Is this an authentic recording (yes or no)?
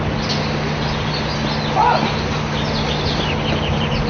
yes